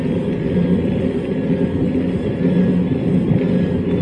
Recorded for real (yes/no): yes